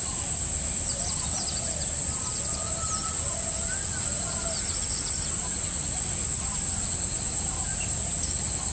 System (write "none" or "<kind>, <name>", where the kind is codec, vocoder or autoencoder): none